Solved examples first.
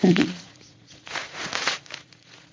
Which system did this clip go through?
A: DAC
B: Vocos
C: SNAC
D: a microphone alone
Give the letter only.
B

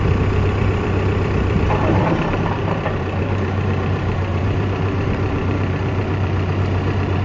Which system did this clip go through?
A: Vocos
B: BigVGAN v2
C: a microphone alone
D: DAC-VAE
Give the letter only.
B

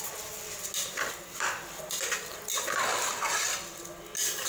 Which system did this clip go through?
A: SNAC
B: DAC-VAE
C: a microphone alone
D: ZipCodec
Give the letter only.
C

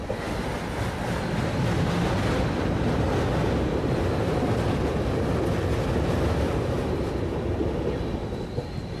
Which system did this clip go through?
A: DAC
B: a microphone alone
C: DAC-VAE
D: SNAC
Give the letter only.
B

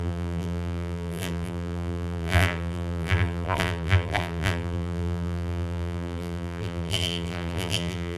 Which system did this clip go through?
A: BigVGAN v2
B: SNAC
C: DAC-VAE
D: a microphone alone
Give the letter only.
A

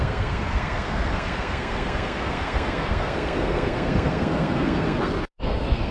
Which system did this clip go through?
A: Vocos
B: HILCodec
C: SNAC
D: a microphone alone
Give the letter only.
C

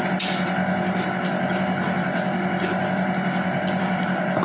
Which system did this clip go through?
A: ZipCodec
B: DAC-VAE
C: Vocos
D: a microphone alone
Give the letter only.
D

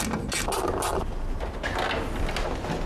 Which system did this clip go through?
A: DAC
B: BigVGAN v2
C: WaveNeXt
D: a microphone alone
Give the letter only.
D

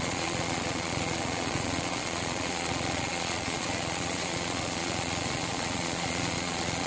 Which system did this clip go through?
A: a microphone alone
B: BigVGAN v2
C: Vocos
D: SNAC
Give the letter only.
C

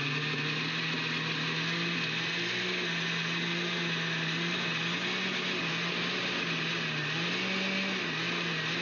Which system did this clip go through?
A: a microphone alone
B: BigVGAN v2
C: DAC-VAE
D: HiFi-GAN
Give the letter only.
A